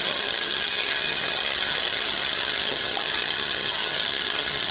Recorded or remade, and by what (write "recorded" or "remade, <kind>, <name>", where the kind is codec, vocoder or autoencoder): remade, vocoder, HiFi-GAN